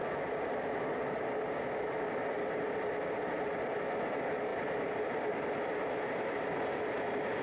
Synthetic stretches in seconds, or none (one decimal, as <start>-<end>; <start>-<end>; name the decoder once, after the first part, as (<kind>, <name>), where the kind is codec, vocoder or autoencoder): none